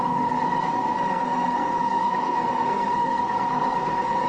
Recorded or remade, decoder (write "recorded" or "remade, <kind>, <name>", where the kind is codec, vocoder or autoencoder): remade, codec, SNAC